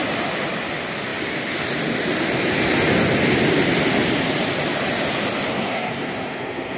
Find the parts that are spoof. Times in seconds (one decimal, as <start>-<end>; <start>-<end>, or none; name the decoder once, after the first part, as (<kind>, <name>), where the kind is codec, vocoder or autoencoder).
5.5-6.8 (codec, SNAC)